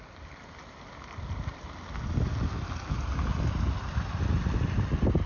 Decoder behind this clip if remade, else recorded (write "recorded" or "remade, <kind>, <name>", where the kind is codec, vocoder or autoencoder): recorded